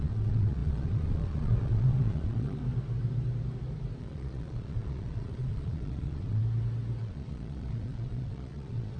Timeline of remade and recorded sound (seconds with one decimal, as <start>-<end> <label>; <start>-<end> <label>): 0.0-2.6 remade; 2.6-4.0 recorded; 4.0-6.4 remade; 6.4-7.0 recorded; 7.0-9.0 remade